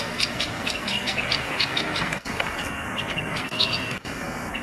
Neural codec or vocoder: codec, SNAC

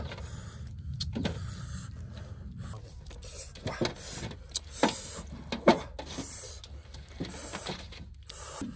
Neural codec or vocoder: none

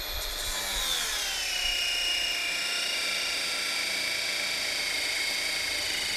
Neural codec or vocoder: none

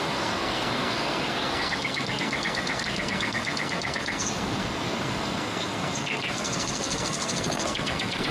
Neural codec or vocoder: codec, SNAC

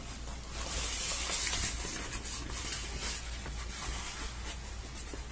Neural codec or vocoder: none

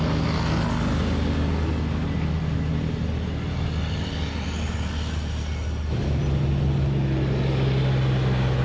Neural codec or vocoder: none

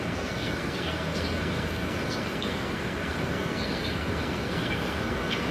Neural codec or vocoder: codec, SNAC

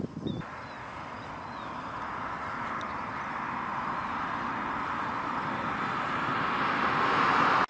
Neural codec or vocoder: none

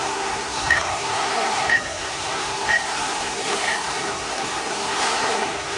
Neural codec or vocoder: codec, SNAC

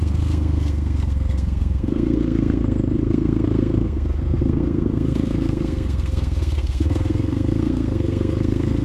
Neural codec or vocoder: codec, SNAC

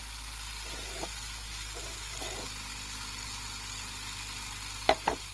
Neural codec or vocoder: none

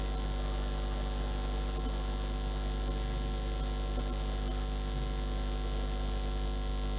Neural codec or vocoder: none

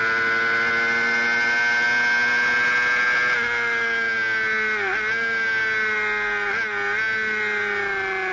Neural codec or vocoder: none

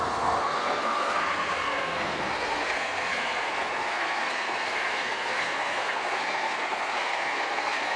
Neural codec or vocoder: codec, SNAC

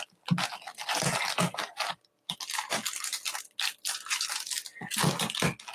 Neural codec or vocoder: none